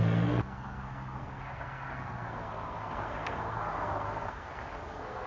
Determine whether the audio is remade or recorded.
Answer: remade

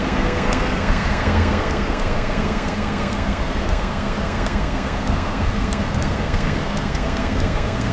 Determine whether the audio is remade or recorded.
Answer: remade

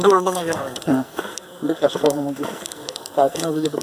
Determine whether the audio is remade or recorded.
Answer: remade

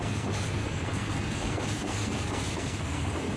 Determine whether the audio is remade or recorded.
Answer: remade